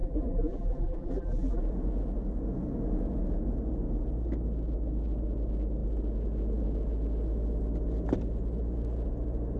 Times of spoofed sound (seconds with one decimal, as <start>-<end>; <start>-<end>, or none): 0.0-1.6